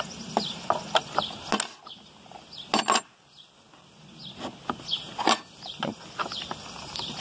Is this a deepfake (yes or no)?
no